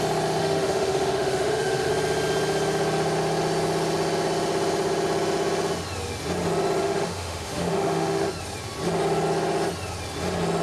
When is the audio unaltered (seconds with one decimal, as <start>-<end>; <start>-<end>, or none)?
0.0-0.4; 1.9-6.8; 8.3-10.6